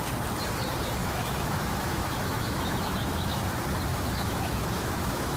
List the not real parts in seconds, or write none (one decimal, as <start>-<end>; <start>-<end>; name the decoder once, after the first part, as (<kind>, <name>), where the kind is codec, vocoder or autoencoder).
1.0-3.4 (autoencoder, DAC-VAE); 3.9-5.4